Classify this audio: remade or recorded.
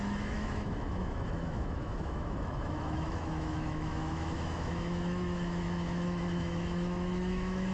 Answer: remade